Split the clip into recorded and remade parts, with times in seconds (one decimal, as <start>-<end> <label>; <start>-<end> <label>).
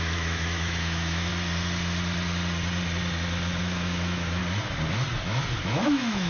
0.0-1.3 remade; 1.3-3.6 recorded; 3.6-4.4 remade; 4.4-5.6 recorded; 5.6-6.3 remade